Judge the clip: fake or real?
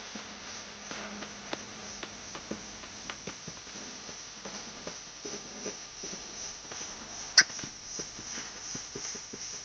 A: real